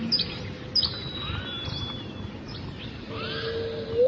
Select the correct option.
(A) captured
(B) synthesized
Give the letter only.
A